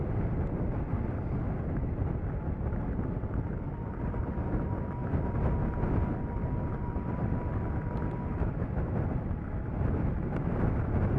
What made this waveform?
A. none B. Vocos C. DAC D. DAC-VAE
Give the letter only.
A